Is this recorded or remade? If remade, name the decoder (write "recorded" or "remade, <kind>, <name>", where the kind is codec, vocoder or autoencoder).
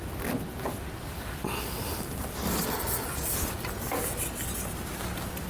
recorded